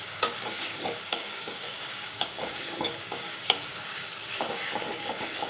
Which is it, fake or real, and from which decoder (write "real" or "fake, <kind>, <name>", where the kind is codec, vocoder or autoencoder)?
fake, codec, DAC